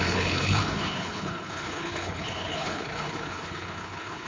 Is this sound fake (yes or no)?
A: yes